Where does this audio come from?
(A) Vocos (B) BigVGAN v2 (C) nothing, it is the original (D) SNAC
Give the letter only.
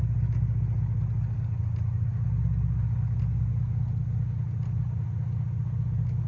C